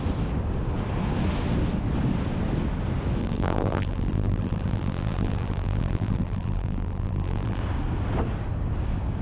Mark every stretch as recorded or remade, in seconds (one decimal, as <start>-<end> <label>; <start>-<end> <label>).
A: 0.0-3.2 recorded; 3.2-7.6 remade; 7.6-9.2 recorded

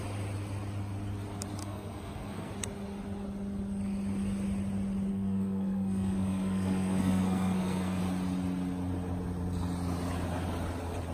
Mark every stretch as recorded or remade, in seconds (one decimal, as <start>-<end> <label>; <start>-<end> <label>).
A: 0.0-1.6 recorded; 1.6-2.5 remade; 2.5-5.1 recorded; 5.1-8.0 remade; 8.0-11.1 recorded

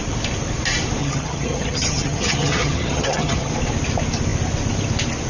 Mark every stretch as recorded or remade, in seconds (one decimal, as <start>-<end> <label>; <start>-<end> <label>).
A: 0.0-1.0 recorded; 1.0-3.5 remade; 3.5-5.3 recorded

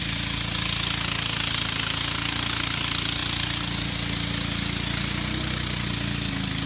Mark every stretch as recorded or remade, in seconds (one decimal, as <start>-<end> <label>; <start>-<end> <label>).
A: 0.0-6.7 recorded

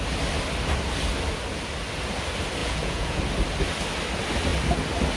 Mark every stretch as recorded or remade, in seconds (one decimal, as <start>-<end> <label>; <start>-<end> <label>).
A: 0.0-2.6 recorded; 2.6-3.2 remade; 3.2-5.2 recorded

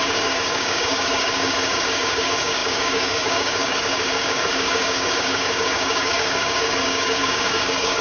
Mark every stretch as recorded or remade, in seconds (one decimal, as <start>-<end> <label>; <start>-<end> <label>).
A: 0.0-8.0 remade

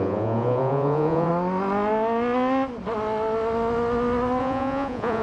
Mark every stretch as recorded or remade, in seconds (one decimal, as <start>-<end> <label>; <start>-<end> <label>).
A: 0.0-1.3 remade; 1.3-4.4 recorded; 4.4-5.2 remade

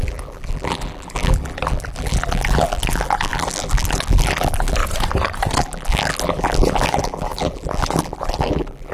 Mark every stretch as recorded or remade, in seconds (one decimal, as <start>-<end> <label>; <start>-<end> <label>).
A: 0.0-4.8 remade; 4.8-5.6 recorded; 5.6-8.9 remade